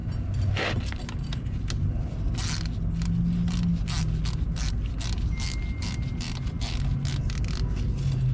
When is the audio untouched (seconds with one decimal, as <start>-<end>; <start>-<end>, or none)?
0.0-8.3